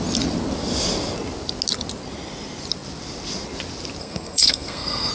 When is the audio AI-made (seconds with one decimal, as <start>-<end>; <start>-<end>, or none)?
4.0-5.1